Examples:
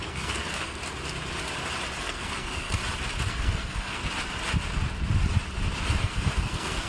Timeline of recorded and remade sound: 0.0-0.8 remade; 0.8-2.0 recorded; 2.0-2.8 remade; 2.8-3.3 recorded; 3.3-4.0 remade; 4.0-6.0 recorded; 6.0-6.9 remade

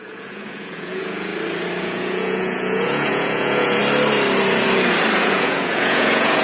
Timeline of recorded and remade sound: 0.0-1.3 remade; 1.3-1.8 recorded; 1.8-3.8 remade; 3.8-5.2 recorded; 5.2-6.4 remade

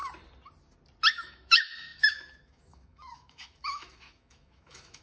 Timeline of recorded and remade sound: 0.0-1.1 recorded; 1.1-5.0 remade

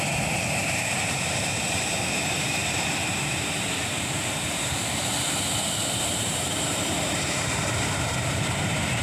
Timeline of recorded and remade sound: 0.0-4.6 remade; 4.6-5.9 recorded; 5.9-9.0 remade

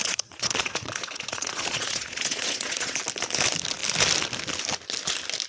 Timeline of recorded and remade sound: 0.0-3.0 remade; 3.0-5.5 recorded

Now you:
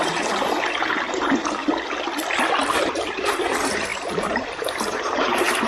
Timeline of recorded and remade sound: 0.0-1.6 remade; 1.6-2.8 recorded; 2.8-5.7 remade

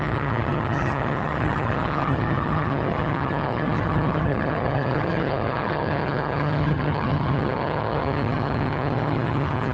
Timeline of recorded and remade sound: 0.0-9.7 remade